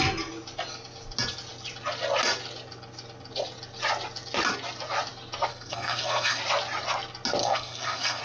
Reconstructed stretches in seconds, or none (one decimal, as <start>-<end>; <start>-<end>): 5.5-6.4; 7.4-8.2